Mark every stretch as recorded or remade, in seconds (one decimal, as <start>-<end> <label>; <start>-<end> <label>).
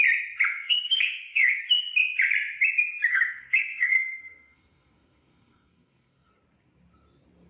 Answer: 0.0-0.5 recorded; 0.5-1.6 remade; 1.6-3.1 recorded; 3.1-6.3 remade; 6.3-7.5 recorded